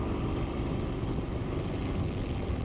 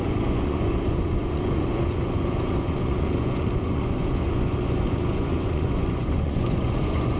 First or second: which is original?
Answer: first